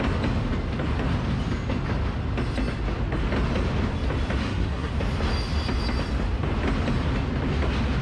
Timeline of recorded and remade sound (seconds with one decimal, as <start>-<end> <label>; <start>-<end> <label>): 0.0-4.4 recorded; 4.4-4.9 remade; 4.9-8.0 recorded